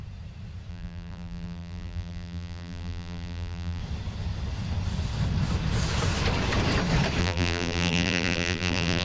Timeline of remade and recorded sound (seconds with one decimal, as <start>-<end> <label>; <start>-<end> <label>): 0.0-0.7 recorded; 0.7-3.8 remade; 3.8-7.2 recorded; 7.2-9.0 remade